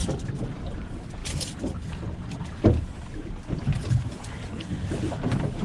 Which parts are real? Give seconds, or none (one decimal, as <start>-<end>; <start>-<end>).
0.0-5.6